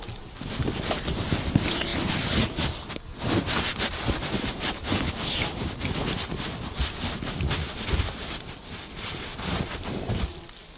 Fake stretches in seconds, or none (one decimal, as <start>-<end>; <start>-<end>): none